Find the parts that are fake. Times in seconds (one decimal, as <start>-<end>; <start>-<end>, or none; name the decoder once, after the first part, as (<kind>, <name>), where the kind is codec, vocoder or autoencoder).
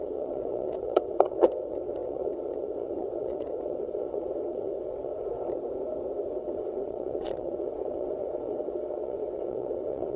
0.0-5.1 (vocoder, WaveNeXt); 6.4-10.2